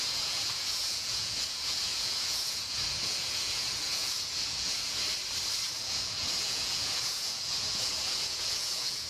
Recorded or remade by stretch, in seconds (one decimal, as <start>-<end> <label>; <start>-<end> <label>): 0.0-5.0 remade; 5.0-5.8 recorded; 5.8-9.1 remade

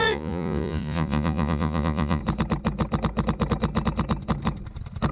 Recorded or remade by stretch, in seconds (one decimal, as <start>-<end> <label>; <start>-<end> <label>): 0.0-2.2 remade; 2.2-5.1 recorded

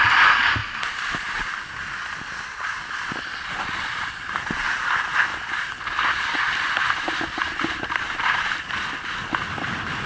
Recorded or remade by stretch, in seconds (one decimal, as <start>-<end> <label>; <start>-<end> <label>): 0.0-10.1 recorded

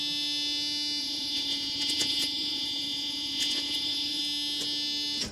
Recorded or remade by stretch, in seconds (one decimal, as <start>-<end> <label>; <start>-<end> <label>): 0.0-1.0 recorded; 1.0-4.2 remade; 4.2-5.3 recorded

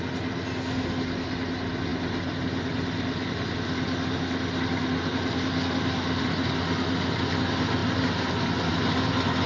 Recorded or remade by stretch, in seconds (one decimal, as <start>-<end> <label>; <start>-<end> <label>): 0.0-9.5 recorded

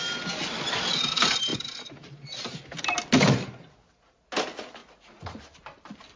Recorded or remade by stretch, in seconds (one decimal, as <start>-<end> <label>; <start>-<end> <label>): 0.0-4.8 recorded; 4.8-5.4 remade; 5.4-6.2 recorded

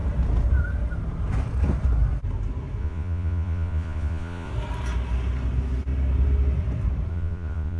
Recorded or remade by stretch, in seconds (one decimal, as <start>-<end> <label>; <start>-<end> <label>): 0.0-2.8 recorded; 2.8-4.5 remade; 4.5-7.1 recorded; 7.1-7.8 remade

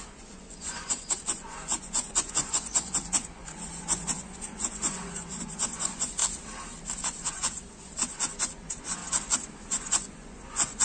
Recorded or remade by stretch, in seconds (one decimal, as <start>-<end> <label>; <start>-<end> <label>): 0.0-6.2 remade; 6.2-7.0 recorded; 7.0-9.0 remade; 9.0-9.6 recorded; 9.6-10.8 remade